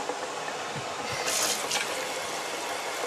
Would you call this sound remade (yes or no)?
no